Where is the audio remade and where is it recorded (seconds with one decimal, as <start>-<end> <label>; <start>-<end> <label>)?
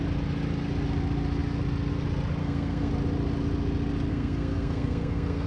0.0-2.4 recorded; 2.4-2.9 remade; 2.9-4.1 recorded; 4.1-5.5 remade